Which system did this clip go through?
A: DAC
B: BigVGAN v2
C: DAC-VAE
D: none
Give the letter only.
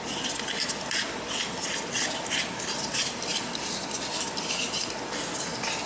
D